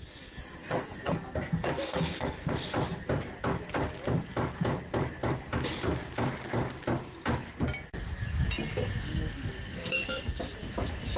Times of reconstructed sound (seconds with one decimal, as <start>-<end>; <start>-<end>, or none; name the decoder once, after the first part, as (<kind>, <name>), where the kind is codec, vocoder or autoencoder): 0.6-2.5 (codec, SNAC); 9.0-10.4